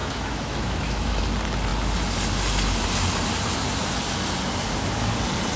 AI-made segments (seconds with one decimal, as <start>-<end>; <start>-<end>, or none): 0.0-1.2